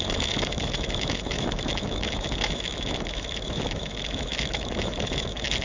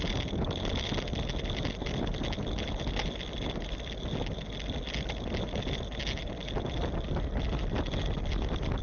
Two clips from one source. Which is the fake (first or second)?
first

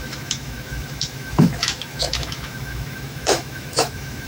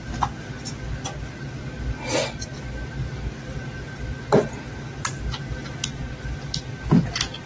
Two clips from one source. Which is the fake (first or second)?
first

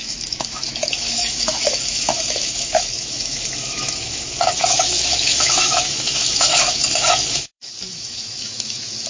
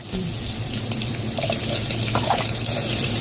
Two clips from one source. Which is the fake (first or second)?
first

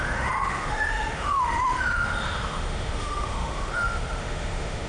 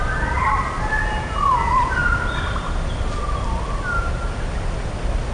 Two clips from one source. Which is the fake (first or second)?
first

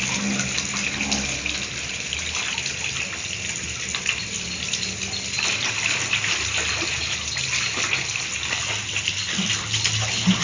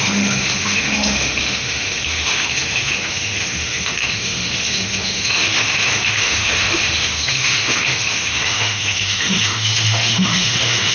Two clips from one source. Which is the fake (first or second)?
second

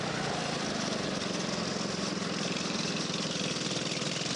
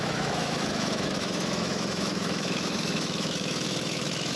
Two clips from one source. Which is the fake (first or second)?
second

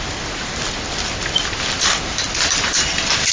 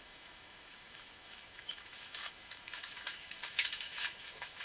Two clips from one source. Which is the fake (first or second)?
second